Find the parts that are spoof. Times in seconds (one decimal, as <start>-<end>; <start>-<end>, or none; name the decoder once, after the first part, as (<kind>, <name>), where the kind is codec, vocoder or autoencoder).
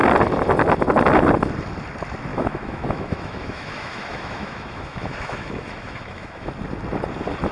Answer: 2.3-6.5 (autoencoder, DAC-VAE)